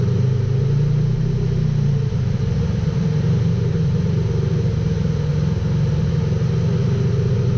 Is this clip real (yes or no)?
yes